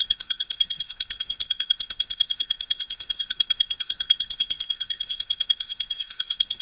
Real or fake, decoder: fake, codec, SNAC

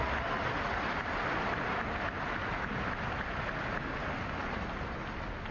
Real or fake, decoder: real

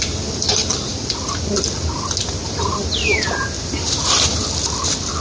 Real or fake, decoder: real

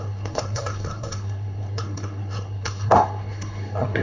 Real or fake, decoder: fake, codec, SNAC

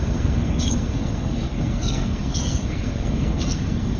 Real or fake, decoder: fake, codec, SNAC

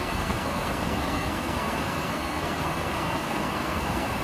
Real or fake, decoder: fake, codec, SNAC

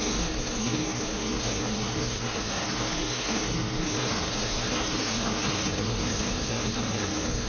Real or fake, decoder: fake, codec, SNAC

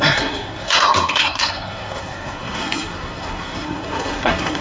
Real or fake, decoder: fake, codec, SNAC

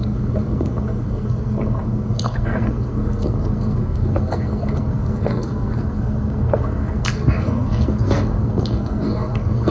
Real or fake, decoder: fake, codec, SNAC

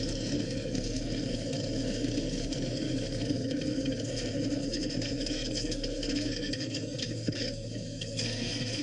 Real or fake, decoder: fake, codec, SNAC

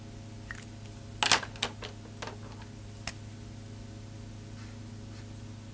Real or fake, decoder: real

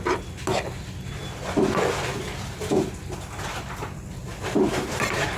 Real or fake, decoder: real